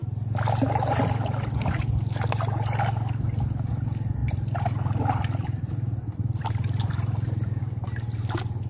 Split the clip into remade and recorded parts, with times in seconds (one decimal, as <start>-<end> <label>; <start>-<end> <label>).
0.0-4.2 recorded; 4.2-7.6 remade; 7.6-8.7 recorded